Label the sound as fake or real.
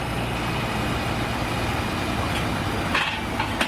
real